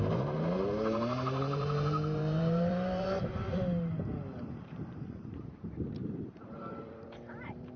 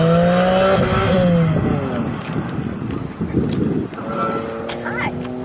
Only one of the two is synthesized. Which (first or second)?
first